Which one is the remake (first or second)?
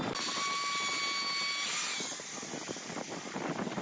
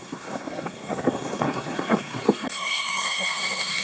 second